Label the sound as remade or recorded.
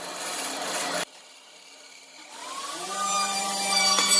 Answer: remade